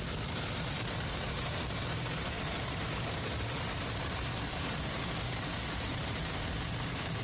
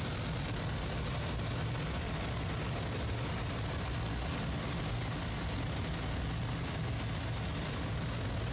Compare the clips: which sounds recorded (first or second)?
second